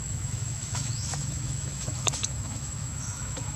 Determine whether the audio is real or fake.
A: fake